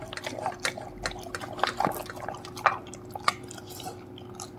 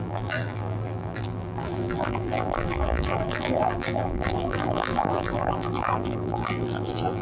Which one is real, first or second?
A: first